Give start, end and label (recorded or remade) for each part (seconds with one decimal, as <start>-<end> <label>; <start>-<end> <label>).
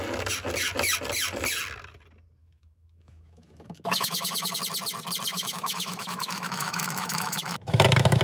0.0-2.4 recorded; 2.4-4.6 remade; 4.6-5.3 recorded; 5.3-8.2 remade